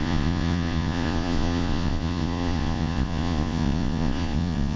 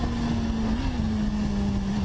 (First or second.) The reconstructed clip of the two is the first